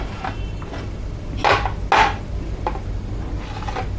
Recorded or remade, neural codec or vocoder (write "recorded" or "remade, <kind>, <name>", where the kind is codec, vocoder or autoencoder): recorded